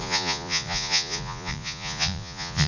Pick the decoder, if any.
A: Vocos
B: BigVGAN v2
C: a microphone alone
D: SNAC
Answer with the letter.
A